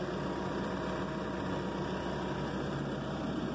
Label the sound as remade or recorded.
recorded